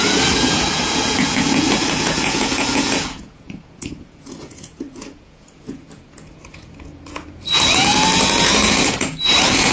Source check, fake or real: fake